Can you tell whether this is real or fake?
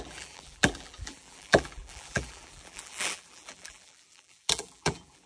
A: fake